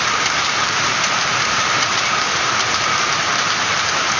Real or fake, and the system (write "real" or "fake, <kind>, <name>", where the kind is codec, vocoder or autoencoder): fake, vocoder, BigVGAN v2